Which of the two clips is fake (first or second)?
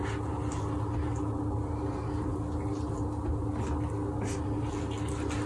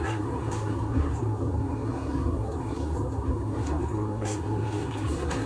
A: second